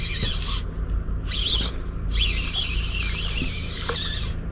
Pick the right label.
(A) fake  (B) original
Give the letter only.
B